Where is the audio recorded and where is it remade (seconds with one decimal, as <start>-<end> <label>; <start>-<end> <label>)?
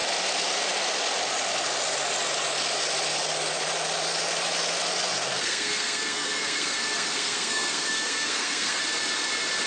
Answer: 0.0-5.3 recorded; 5.3-8.8 remade; 8.8-9.7 recorded